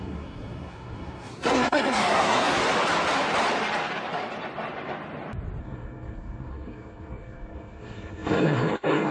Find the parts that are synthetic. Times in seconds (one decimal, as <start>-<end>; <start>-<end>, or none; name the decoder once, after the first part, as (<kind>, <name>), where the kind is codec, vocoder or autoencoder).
0.0-2.6 (codec, SNAC); 5.6-9.1